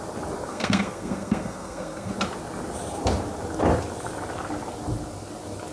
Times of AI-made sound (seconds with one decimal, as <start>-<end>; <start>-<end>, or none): 0.5-2.1